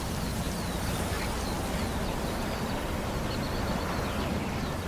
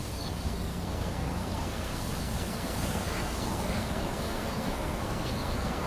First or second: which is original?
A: first